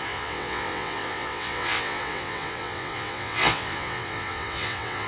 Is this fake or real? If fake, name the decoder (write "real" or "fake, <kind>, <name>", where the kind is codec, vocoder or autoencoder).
fake, vocoder, WaveNeXt